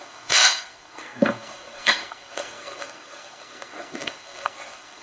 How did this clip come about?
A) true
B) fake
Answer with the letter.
B